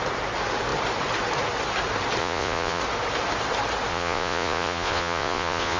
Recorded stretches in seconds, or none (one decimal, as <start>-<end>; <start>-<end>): 0.0-2.2; 2.8-3.9